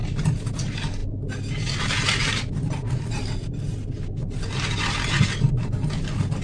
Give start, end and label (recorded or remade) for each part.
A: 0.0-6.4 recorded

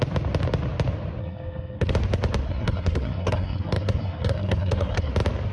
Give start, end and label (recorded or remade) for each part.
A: 0.0-1.2 recorded; 1.2-1.9 remade; 1.9-2.4 recorded; 2.4-5.1 remade; 5.1-5.5 recorded

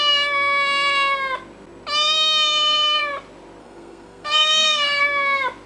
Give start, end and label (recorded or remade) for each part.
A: 0.0-3.6 recorded; 3.6-5.0 remade; 5.0-5.7 recorded

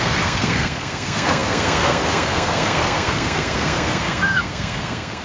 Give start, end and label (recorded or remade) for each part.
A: 0.0-5.2 remade

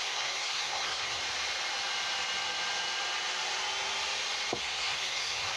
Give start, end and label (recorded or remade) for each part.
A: 0.0-1.2 remade; 1.2-4.6 recorded; 4.6-5.6 remade

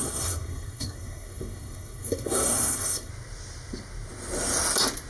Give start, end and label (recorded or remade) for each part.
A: 0.0-3.1 remade; 3.1-5.1 recorded

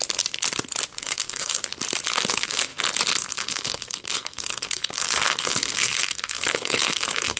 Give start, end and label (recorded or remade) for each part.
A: 0.0-1.0 recorded; 1.0-1.6 remade; 1.6-2.3 recorded; 2.3-2.7 remade; 2.7-3.3 recorded; 3.3-7.4 remade

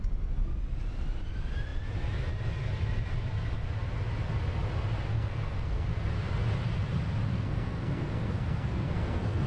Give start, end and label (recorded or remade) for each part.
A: 0.0-5.1 recorded; 5.1-5.9 remade; 5.9-7.3 recorded; 7.3-9.5 remade